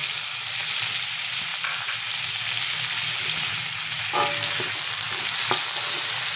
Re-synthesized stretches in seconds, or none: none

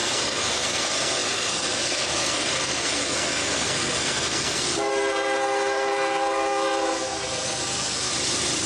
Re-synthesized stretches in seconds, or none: 0.0-8.1

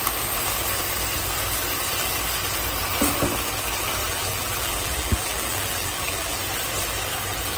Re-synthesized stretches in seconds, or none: 4.0-6.3

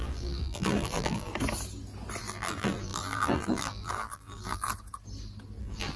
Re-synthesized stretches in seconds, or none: 0.0-1.3; 2.2-4.7; 5.6-6.0

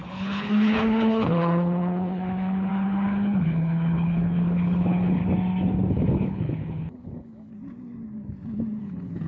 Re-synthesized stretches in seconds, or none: 0.0-5.2; 5.9-7.5; 8.8-9.3

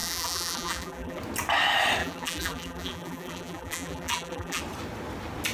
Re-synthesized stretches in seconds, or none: 0.0-1.2; 2.0-4.6